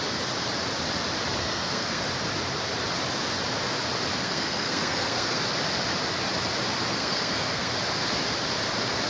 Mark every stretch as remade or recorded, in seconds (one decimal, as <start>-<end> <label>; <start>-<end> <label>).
0.0-1.4 recorded; 1.4-2.0 remade; 2.0-4.2 recorded; 4.2-5.4 remade; 5.4-6.9 recorded; 6.9-7.8 remade; 7.8-9.1 recorded